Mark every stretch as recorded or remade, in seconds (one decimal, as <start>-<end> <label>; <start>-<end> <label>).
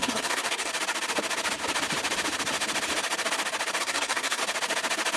0.0-0.7 remade; 0.7-3.8 recorded; 3.8-4.4 remade; 4.4-5.2 recorded